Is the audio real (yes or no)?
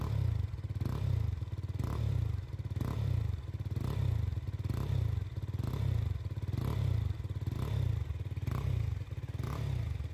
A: yes